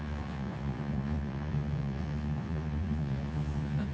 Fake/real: fake